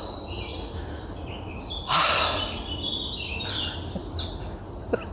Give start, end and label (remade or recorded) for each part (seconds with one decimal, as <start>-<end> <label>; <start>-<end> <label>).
0.0-5.1 recorded